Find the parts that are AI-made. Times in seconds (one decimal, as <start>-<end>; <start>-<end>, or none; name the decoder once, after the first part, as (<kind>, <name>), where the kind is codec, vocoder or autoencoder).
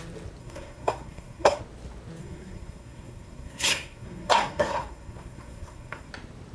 0.4-1.6 (codec, SNAC); 2.2-6.1